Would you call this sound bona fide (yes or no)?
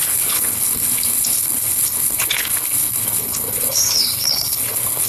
no